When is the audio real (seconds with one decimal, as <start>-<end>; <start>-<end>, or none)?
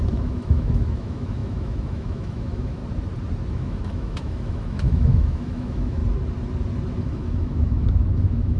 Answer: 2.8-3.5; 6.0-7.0